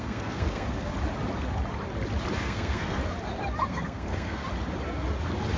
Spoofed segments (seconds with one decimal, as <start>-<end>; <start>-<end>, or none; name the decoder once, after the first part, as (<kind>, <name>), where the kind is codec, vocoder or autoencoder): 0.0-0.9 (codec, SNAC); 2.4-3.0; 3.7-4.4